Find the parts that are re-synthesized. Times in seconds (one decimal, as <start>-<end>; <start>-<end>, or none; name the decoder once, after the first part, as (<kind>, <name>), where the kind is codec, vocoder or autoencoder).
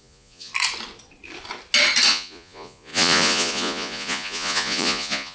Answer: 0.0-0.5 (vocoder, Vocos); 2.1-5.3